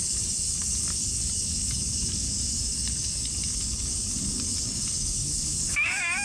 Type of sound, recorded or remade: remade